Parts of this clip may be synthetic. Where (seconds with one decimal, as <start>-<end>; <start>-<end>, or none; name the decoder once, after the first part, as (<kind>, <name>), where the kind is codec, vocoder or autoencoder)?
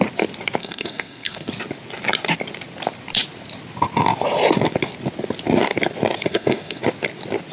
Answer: 0.6-1.5 (codec, SNAC); 6.3-6.8